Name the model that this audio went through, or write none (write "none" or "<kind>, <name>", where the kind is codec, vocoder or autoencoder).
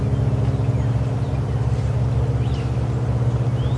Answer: none